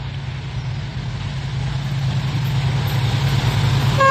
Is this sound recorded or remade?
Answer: recorded